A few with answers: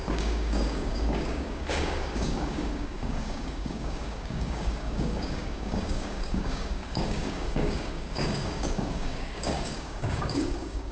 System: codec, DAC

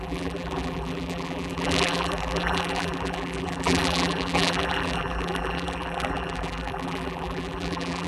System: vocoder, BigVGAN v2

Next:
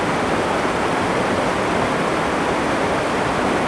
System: none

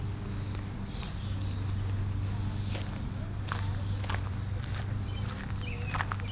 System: none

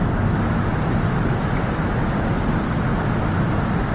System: none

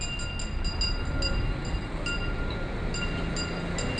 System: none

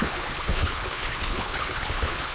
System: codec, HILCodec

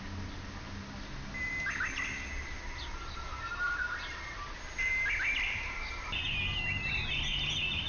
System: none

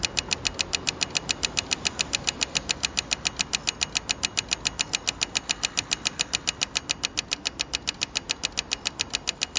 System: none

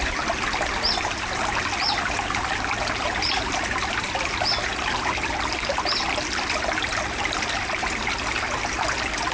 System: none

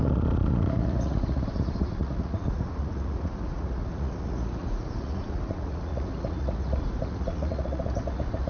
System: vocoder, Vocos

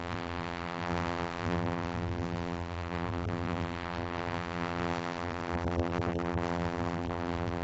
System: vocoder, BigVGAN v2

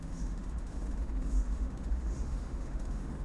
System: autoencoder, DAC-VAE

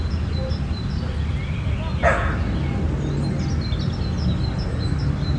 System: none